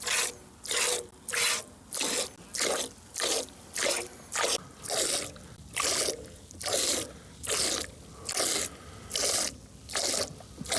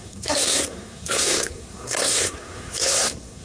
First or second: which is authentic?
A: first